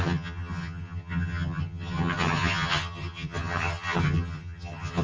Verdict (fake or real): fake